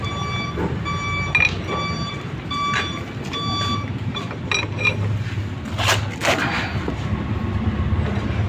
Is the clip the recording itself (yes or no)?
yes